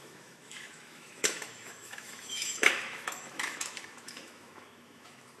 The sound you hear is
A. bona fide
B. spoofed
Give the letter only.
B